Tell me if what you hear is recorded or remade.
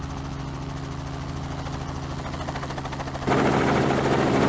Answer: recorded